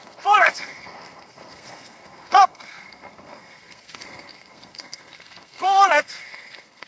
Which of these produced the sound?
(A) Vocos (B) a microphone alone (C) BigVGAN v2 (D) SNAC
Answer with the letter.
D